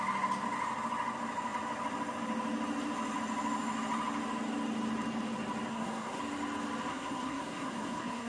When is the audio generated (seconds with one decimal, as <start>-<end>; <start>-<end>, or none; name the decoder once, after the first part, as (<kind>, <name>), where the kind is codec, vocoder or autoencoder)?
5.7-6.2 (codec, SNAC); 6.9-8.3